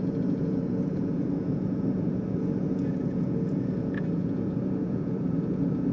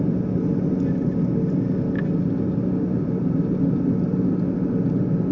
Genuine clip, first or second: second